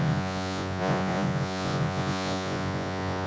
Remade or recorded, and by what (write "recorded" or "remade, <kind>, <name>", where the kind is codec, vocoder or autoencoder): remade, vocoder, Vocos